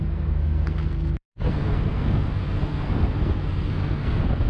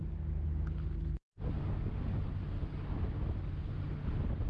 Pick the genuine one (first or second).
second